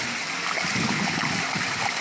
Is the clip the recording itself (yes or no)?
yes